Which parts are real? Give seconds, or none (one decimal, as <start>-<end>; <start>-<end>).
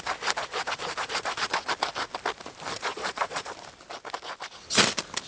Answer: 0.0-1.0; 1.7-2.9; 3.5-5.3